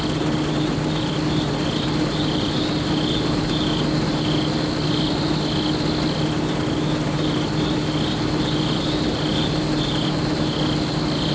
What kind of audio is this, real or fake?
real